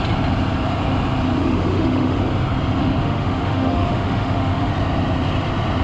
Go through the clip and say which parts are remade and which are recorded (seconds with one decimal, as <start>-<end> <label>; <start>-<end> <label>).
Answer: 0.0-1.4 recorded; 1.4-2.2 remade; 2.2-2.8 recorded; 2.8-4.7 remade; 4.7-5.8 recorded